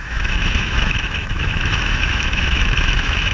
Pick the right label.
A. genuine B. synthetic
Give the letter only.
B